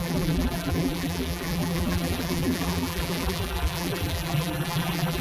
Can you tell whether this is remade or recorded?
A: remade